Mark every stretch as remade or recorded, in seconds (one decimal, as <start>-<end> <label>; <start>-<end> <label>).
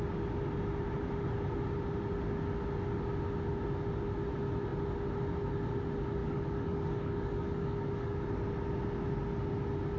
0.0-6.2 recorded; 6.2-8.2 remade; 8.2-10.0 recorded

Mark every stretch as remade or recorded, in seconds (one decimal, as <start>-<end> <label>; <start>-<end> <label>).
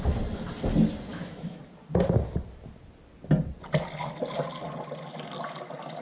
0.0-1.1 recorded; 1.1-1.6 remade; 1.6-6.0 recorded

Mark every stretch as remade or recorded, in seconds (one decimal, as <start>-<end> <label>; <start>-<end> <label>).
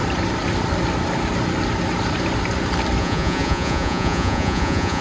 0.0-3.0 recorded; 3.0-5.0 remade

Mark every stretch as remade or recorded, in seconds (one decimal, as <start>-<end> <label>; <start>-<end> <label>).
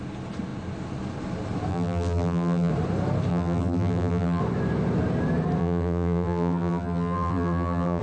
0.0-1.7 recorded; 1.7-2.7 remade; 2.7-3.3 recorded; 3.3-4.4 remade; 4.4-5.6 recorded; 5.6-8.0 remade